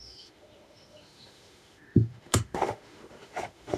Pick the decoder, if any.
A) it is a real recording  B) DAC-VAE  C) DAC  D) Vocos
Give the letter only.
B